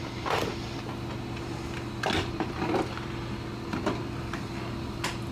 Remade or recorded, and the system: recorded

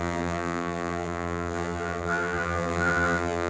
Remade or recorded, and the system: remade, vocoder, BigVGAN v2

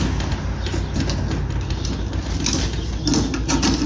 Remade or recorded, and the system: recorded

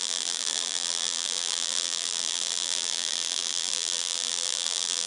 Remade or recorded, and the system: remade, vocoder, BigVGAN v2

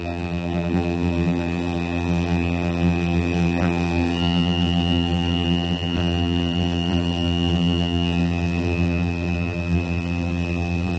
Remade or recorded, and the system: remade, vocoder, BigVGAN v2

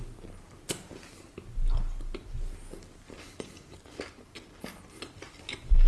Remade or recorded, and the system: recorded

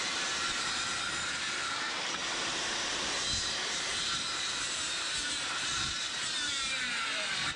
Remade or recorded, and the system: remade, vocoder, BigVGAN v2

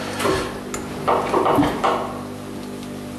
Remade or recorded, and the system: recorded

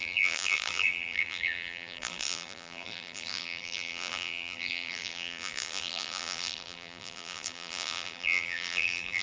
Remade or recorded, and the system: remade, vocoder, BigVGAN v2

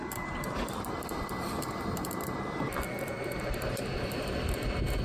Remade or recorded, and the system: remade, vocoder, BigVGAN v2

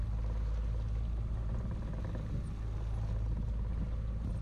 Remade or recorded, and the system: recorded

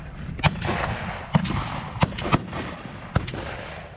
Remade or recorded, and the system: recorded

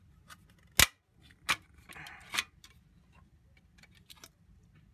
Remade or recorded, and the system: recorded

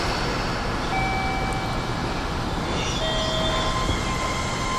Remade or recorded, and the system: recorded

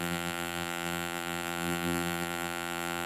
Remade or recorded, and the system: remade, vocoder, BigVGAN v2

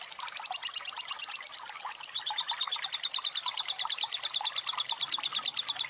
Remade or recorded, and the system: recorded